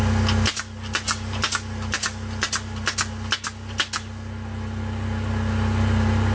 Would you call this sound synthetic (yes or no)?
no